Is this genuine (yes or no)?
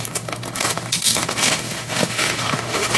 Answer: no